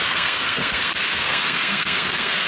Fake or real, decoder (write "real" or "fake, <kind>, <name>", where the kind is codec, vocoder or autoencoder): fake, codec, SNAC